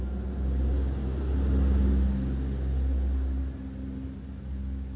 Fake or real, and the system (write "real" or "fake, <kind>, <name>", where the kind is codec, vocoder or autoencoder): real